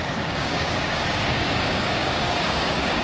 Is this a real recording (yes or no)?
no